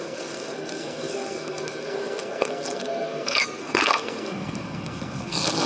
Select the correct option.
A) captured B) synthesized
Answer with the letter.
B